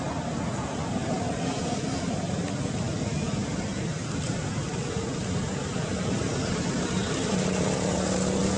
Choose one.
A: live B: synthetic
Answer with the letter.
A